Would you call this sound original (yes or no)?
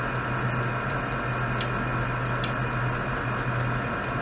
yes